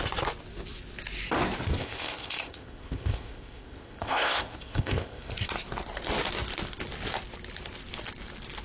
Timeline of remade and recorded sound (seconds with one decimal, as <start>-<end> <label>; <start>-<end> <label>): 0.0-1.8 recorded; 1.8-5.3 remade; 5.3-8.6 recorded